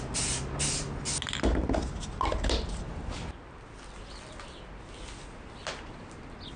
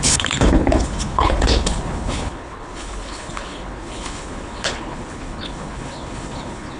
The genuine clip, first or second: first